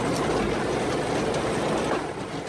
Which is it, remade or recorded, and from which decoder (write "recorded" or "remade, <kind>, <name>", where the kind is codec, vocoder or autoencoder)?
recorded